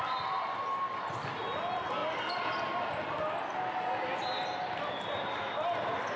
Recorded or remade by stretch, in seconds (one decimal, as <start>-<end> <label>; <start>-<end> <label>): 0.0-6.2 recorded